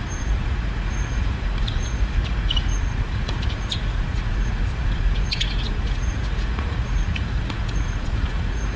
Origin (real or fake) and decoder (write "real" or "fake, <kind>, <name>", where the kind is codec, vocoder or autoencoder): fake, vocoder, Vocos